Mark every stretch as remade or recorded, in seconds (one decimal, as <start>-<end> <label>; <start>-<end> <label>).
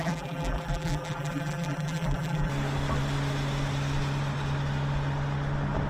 0.0-2.5 remade; 2.5-5.9 recorded